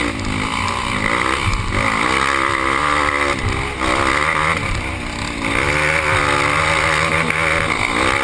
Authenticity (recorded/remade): recorded